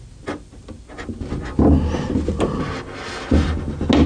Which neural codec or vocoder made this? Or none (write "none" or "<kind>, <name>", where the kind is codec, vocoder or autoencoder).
none